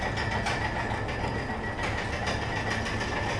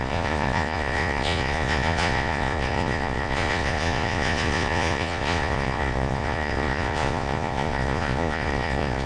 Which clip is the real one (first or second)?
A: first